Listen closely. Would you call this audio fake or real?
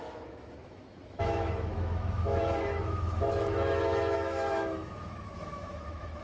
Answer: fake